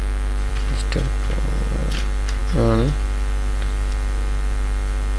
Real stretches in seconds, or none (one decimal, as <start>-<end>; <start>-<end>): 0.5-5.2